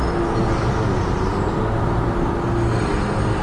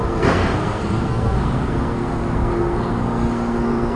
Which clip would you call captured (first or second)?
first